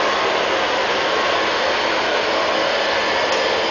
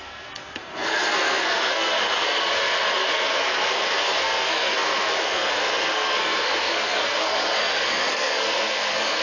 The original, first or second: first